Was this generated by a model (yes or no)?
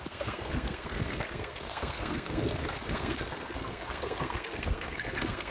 yes